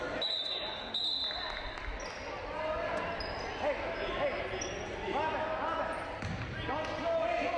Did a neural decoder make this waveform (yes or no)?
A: no